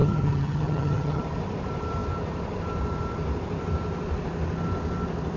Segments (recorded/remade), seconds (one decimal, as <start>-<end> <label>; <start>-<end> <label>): 0.0-1.2 remade; 1.2-5.4 recorded